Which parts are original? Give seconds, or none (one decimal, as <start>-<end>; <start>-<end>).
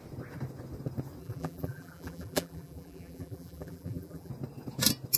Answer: 0.0-1.2; 4.3-5.2